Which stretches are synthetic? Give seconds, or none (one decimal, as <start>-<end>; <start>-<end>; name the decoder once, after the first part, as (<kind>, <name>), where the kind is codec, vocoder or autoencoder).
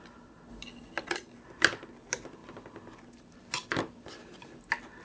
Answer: none